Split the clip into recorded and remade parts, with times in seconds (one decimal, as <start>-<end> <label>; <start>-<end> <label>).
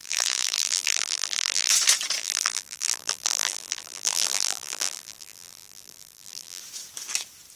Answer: 0.0-1.7 remade; 1.7-2.2 recorded; 2.2-6.6 remade; 6.6-7.6 recorded